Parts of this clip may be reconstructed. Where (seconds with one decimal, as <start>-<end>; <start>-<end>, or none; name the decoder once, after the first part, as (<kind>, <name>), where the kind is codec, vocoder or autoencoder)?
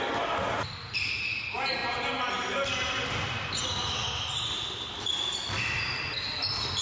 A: none